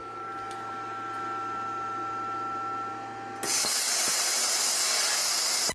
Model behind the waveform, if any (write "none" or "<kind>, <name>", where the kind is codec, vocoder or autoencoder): none